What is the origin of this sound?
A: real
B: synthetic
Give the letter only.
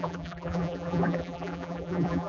B